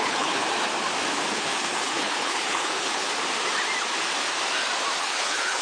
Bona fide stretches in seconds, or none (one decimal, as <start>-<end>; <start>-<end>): 0.4-1.3; 3.1-5.0